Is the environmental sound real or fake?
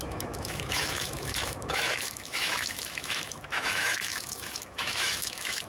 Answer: fake